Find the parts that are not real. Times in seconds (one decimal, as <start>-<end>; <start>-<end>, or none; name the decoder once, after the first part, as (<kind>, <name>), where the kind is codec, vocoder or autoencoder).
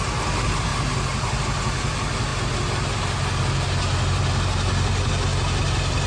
none